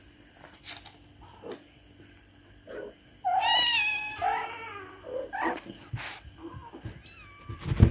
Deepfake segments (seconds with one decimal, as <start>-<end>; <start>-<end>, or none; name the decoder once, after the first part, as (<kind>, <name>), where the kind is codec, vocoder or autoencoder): none